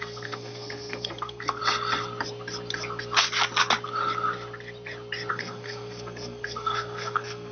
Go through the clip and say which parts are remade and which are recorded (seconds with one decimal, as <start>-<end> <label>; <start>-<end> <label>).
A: 0.0-1.6 remade; 1.6-5.3 recorded; 5.3-7.5 remade